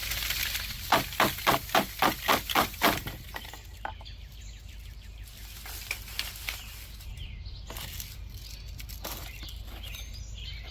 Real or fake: real